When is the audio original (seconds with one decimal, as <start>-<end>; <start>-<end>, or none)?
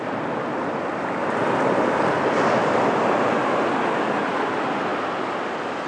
0.0-5.9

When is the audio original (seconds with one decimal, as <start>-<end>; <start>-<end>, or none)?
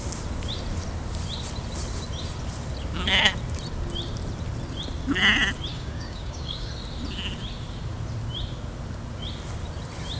0.0-5.7; 6.7-10.2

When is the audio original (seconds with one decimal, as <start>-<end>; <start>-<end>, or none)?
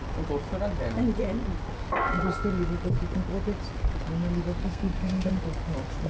0.0-4.6; 5.3-6.1